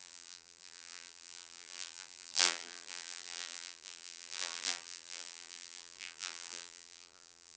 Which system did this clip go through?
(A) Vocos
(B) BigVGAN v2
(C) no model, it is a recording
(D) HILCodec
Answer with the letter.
B